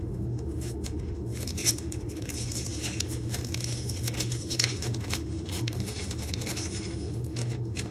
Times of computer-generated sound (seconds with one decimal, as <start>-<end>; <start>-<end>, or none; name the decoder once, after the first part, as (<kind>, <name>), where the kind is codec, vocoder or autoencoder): 0.0-7.9 (autoencoder, DAC-VAE)